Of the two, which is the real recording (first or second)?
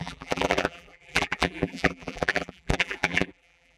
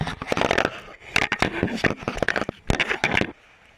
second